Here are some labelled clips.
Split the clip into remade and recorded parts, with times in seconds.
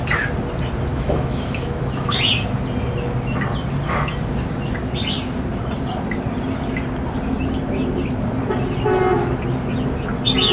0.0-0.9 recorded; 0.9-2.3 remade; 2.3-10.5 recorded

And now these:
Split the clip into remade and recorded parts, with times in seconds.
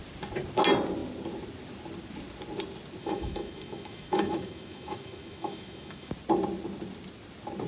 0.0-3.0 recorded; 3.0-6.1 remade; 6.1-7.7 recorded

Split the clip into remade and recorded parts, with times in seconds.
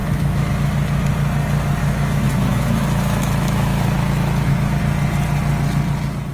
0.0-0.5 remade; 0.5-1.8 recorded; 1.8-4.8 remade; 4.8-6.3 recorded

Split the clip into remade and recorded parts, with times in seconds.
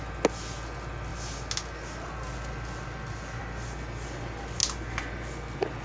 0.0-5.8 recorded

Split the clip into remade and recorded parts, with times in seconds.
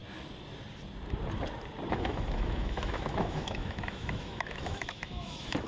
0.0-1.9 recorded; 1.9-5.7 remade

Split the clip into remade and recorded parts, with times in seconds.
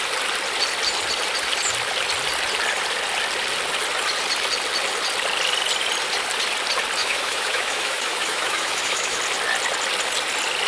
0.0-7.0 recorded; 7.0-9.2 remade; 9.2-10.7 recorded